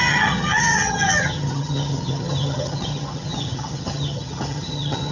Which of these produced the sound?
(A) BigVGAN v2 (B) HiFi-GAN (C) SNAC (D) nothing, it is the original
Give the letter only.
B